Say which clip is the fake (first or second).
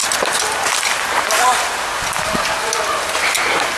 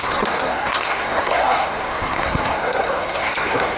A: second